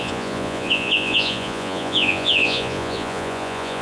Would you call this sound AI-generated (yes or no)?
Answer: yes